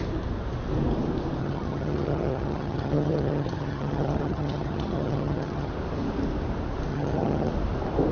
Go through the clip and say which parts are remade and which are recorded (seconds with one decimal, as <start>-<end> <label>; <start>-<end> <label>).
0.0-1.4 recorded; 1.4-5.7 remade; 5.7-6.9 recorded; 6.9-7.5 remade; 7.5-8.1 recorded